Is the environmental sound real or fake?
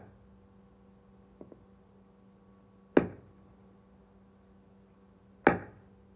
real